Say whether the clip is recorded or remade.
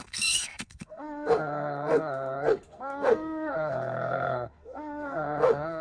remade